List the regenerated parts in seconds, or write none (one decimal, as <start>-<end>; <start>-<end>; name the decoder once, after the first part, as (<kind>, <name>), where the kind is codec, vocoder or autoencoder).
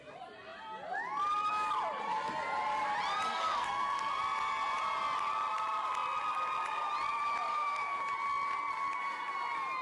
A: 3.3-4.1 (codec, SNAC); 7.5-8.0